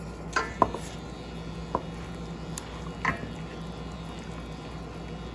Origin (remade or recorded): recorded